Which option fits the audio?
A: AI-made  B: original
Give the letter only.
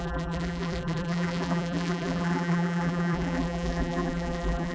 A